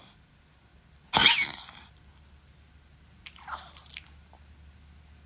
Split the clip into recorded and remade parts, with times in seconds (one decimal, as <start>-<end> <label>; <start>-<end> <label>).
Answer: 0.0-1.2 recorded; 1.2-1.9 remade; 1.9-5.3 recorded

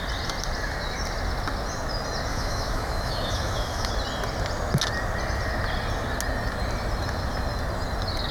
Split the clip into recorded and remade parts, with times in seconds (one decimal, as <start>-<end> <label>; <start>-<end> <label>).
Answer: 0.0-2.3 recorded; 2.3-3.9 remade; 3.9-8.3 recorded

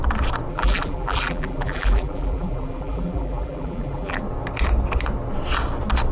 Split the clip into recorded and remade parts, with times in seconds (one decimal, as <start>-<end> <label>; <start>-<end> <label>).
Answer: 0.0-0.5 recorded; 0.5-4.2 remade; 4.2-6.1 recorded

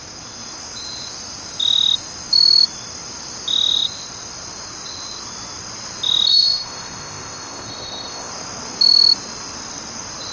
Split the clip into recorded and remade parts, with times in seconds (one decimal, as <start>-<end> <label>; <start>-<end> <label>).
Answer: 0.0-6.3 recorded; 6.3-8.3 remade; 8.3-10.3 recorded

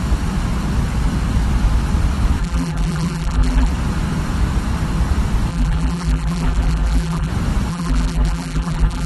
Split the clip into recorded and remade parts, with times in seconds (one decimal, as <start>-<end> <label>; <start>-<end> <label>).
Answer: 0.0-2.4 recorded; 2.4-3.7 remade; 3.7-5.5 recorded; 5.5-7.3 remade; 7.3-7.7 recorded; 7.7-9.1 remade

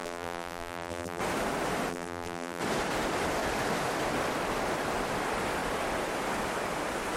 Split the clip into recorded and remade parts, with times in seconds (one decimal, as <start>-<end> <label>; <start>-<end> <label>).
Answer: 0.0-1.2 remade; 1.2-1.9 recorded; 1.9-2.6 remade; 2.6-7.2 recorded

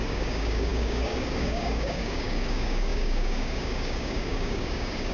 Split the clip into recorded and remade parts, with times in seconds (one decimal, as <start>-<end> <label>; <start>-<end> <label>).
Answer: 0.0-5.1 remade